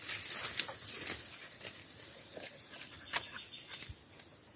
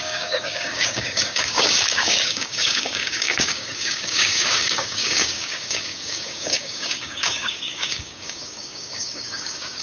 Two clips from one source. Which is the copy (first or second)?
second